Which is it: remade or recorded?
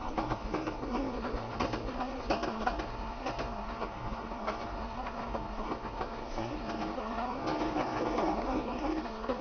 remade